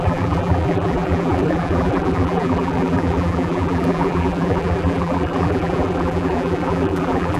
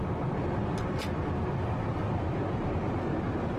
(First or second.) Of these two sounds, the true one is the second